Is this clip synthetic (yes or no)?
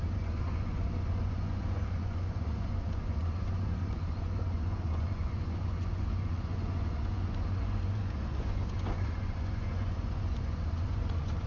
yes